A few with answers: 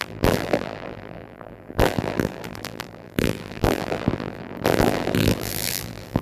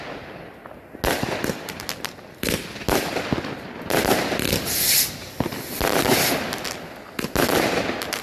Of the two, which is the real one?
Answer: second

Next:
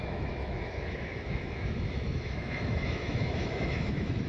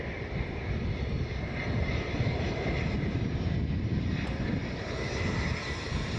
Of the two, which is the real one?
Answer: second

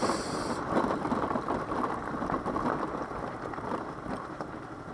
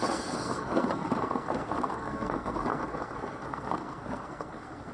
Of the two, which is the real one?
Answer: first